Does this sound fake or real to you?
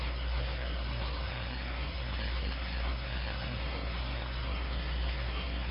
fake